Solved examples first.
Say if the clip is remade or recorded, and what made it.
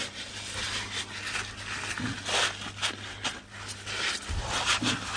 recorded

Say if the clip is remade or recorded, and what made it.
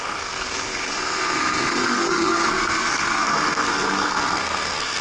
remade, codec, SNAC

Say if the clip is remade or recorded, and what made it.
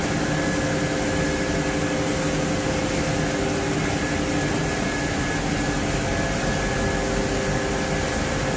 recorded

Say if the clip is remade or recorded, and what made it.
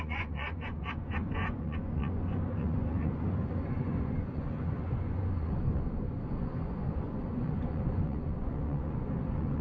remade, vocoder, Vocos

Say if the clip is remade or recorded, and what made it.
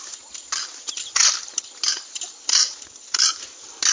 recorded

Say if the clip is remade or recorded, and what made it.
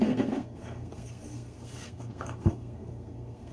remade, codec, SNAC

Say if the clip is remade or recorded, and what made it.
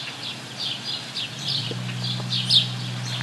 recorded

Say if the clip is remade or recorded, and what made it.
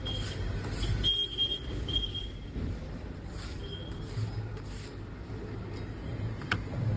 recorded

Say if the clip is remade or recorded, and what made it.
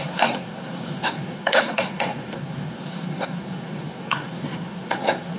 remade, codec, SNAC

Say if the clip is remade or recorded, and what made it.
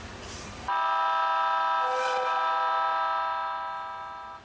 recorded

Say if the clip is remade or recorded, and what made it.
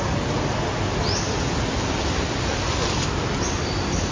recorded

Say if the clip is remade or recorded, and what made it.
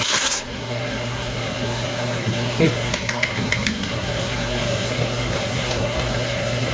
remade, codec, SNAC